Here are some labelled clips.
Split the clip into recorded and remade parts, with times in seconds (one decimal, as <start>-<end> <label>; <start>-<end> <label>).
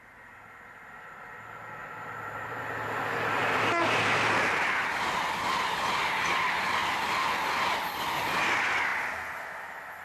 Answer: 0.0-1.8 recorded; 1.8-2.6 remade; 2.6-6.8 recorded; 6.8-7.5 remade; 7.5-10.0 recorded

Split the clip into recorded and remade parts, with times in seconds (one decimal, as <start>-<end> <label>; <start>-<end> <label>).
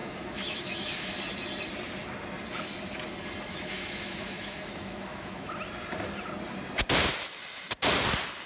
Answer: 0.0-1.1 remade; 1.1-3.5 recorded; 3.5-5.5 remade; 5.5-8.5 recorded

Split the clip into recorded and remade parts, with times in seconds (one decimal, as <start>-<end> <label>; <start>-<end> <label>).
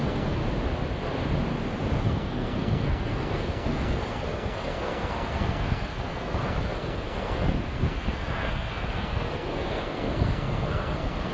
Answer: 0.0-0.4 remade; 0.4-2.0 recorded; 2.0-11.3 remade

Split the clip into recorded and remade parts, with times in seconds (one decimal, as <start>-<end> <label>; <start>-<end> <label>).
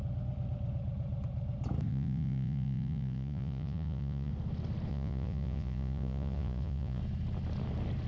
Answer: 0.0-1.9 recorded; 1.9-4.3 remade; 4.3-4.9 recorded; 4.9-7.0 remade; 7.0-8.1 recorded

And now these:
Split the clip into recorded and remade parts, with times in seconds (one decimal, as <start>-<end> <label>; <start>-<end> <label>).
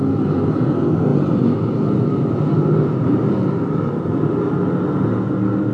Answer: 0.0-1.1 recorded; 1.1-4.5 remade; 4.5-5.7 recorded